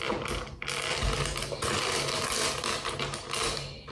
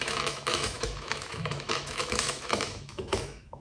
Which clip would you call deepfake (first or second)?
second